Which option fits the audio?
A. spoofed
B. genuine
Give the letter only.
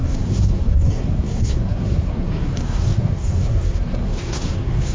A